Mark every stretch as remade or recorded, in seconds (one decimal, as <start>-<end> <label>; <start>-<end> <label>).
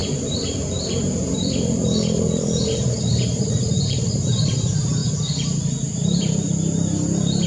0.0-4.5 remade; 4.5-7.5 recorded